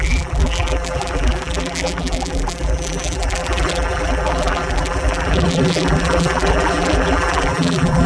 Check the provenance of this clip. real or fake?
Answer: fake